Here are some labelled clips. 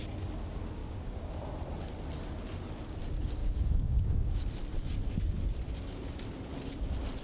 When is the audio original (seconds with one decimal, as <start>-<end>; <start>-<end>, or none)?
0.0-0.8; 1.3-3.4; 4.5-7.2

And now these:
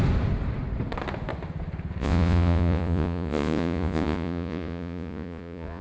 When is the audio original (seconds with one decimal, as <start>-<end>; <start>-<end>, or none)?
0.0-2.0

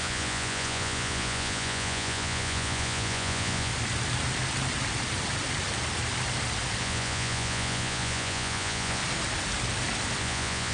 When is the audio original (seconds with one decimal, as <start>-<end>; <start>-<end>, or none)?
3.7-6.8; 9.0-10.2

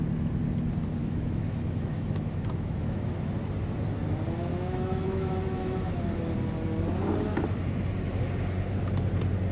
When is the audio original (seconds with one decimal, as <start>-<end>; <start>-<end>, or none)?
0.0-1.0; 3.3-4.5; 6.0-9.5

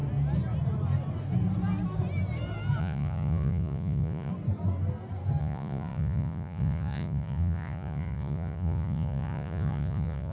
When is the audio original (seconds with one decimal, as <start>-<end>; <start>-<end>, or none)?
0.0-2.8; 4.3-5.4

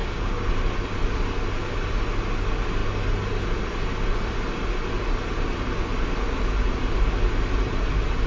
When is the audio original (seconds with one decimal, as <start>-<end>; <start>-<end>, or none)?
0.5-8.3